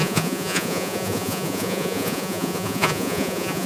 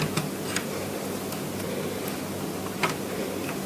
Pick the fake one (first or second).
first